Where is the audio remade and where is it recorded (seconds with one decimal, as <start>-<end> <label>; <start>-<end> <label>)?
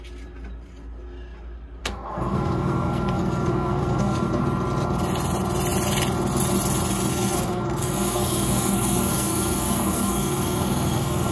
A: 0.0-1.8 recorded; 1.8-4.4 remade; 4.4-7.1 recorded; 7.1-11.3 remade